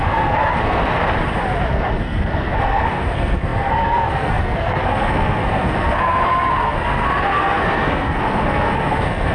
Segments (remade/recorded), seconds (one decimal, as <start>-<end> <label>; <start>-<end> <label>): 0.0-1.0 remade; 1.0-1.7 recorded; 1.7-9.3 remade